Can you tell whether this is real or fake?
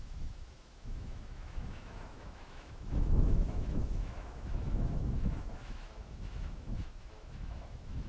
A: fake